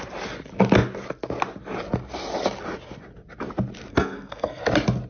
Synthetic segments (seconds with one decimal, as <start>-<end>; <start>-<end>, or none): 3.9-4.6